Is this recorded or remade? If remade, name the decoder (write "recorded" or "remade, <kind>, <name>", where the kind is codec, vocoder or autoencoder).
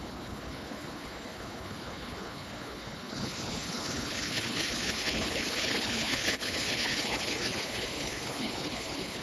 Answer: remade, codec, HILCodec